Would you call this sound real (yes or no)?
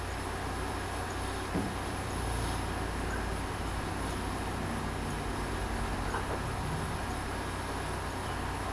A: yes